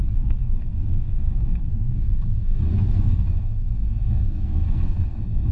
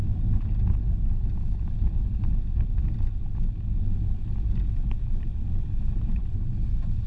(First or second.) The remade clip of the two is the first